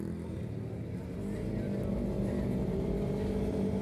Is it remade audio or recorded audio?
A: recorded